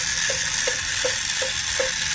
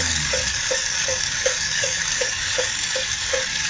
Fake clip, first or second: second